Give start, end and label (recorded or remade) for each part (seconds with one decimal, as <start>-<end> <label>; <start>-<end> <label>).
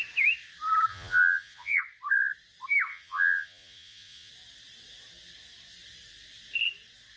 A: 0.0-0.9 recorded; 0.9-1.8 remade; 1.8-2.9 recorded; 2.9-4.3 remade; 4.3-7.2 recorded